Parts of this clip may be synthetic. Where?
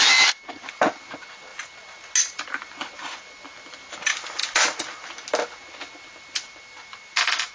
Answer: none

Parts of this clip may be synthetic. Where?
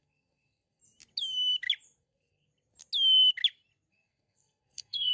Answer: 0.0-0.8 (codec, SNAC); 2.0-2.5; 3.9-5.1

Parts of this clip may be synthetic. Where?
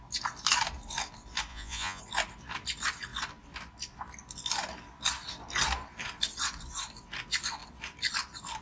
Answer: 1.5-2.0 (vocoder, Vocos)